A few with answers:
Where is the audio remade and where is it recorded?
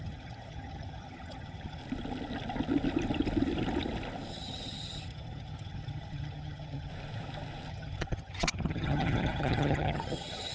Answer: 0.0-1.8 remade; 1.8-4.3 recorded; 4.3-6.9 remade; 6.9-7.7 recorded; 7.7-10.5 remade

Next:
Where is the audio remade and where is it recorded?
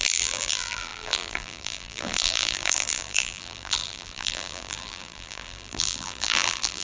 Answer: 0.0-6.8 remade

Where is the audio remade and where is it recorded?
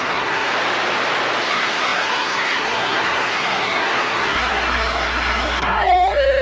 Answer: 0.0-0.5 remade; 0.5-1.5 recorded; 1.5-6.4 remade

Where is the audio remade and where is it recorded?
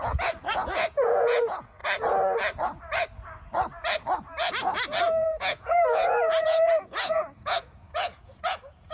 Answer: 0.0-1.8 remade; 1.8-5.0 recorded; 5.0-8.9 remade